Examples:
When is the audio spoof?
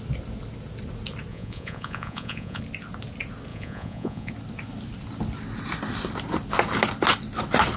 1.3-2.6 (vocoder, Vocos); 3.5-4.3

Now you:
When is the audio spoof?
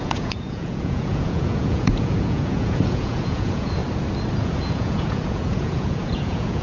0.0-3.8 (vocoder, Vocos); 4.4-6.6